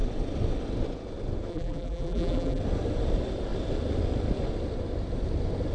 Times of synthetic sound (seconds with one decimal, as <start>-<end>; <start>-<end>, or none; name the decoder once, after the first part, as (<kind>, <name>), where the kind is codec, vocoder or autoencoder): 1.5-2.6 (vocoder, BigVGAN v2)